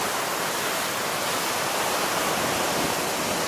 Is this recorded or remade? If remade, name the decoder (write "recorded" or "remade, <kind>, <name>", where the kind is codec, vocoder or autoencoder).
recorded